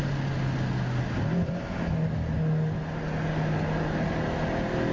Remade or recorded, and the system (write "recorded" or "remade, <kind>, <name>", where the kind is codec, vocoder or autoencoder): recorded